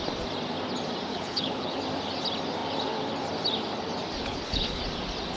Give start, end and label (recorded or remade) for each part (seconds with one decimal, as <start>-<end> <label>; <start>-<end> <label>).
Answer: 0.0-1.1 recorded; 1.1-1.8 remade; 1.8-4.2 recorded; 4.2-4.8 remade; 4.8-5.4 recorded